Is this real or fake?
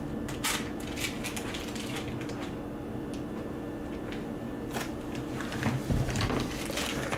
real